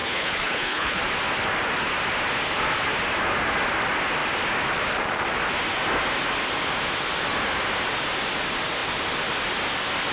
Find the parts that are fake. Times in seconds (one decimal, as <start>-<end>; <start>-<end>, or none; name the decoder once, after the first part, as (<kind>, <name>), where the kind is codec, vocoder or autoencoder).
0.0-1.0 (codec, HILCodec)